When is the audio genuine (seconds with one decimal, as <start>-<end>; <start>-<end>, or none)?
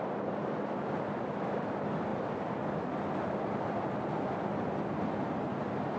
0.0-6.0